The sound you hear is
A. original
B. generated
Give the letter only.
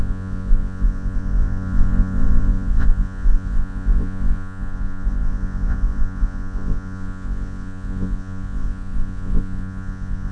B